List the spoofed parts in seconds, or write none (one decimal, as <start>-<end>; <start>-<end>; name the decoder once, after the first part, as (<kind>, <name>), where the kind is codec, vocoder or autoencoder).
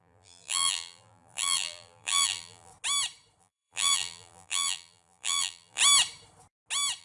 0.0-2.7 (vocoder, BigVGAN v2); 3.4-5.8